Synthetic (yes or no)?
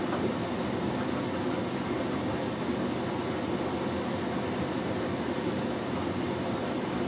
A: no